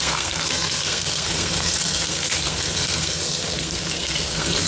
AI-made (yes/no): yes